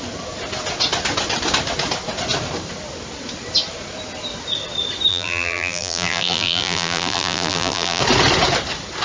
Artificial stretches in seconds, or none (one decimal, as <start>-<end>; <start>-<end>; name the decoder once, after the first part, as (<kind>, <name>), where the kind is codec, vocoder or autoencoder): 5.1-8.0 (vocoder, BigVGAN v2)

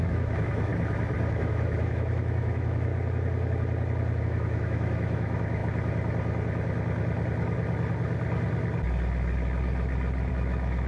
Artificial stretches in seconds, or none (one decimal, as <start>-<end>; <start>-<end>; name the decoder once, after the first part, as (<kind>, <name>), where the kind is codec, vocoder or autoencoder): 0.0-0.7 (autoencoder, DAC-VAE); 1.3-2.9; 4.2-5.6; 10.3-10.9

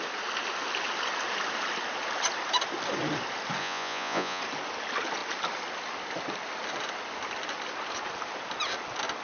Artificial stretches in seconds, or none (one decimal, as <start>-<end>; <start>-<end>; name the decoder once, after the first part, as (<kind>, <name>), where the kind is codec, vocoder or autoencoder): 3.6-4.4 (vocoder, Vocos)